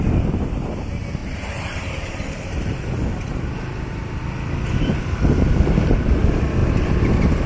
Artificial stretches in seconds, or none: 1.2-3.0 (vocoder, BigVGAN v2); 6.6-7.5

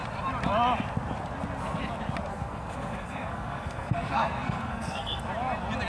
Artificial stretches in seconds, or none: 2.3-5.2 (codec, SNAC)

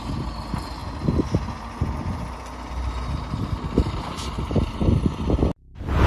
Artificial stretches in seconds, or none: none

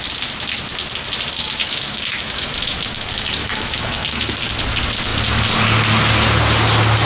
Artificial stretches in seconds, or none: 1.4-4.6 (autoencoder, DAC-VAE)